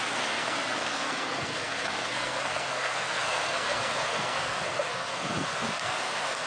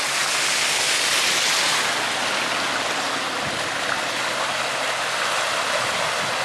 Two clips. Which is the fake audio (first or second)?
first